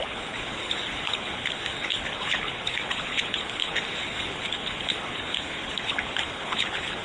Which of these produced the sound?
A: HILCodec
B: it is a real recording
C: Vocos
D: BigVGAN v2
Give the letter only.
A